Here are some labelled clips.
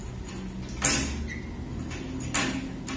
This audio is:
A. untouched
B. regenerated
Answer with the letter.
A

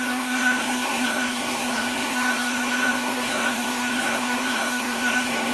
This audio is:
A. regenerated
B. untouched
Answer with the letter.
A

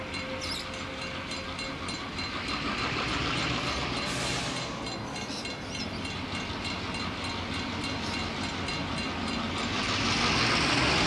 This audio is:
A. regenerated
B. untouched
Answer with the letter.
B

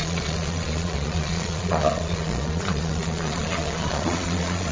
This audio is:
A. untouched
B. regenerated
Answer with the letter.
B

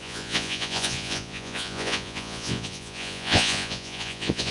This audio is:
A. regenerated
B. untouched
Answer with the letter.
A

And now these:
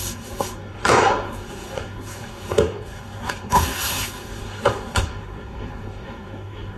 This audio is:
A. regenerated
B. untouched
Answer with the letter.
A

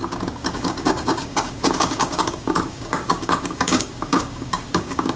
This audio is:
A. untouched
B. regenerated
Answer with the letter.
B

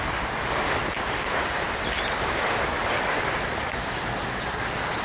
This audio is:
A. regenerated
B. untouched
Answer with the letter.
B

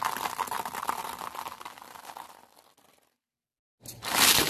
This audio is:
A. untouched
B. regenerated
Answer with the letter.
A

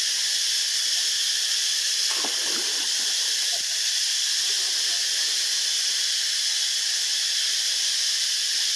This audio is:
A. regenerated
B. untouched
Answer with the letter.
B